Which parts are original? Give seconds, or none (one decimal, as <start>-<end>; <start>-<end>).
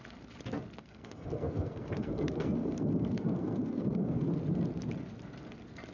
0.0-0.8; 4.3-5.9